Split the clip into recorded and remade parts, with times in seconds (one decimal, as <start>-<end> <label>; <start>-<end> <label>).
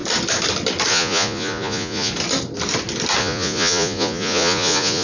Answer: 0.0-0.9 recorded; 0.9-2.1 remade; 2.1-3.2 recorded; 3.2-5.0 remade